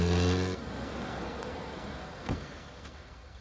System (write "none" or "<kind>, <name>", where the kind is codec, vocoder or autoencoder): codec, SNAC